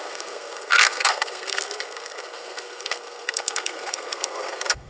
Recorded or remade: remade